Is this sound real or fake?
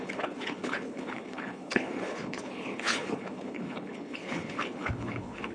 fake